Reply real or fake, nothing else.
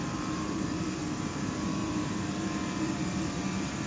fake